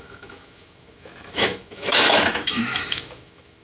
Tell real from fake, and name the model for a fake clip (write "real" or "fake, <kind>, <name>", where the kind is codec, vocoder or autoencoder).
fake, autoencoder, DAC-VAE